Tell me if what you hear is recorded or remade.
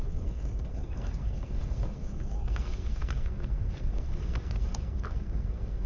remade